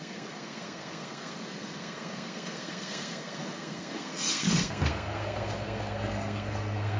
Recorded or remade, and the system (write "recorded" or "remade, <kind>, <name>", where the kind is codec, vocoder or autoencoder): remade, codec, SNAC